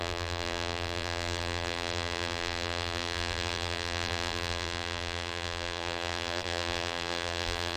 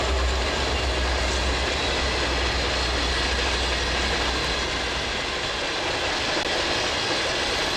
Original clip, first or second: second